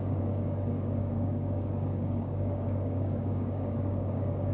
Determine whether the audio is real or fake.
fake